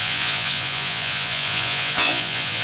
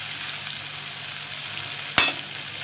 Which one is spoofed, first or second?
first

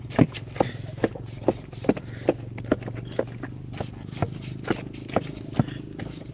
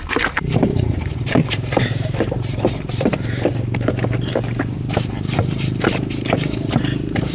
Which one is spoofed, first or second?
second